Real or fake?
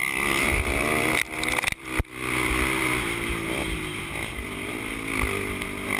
real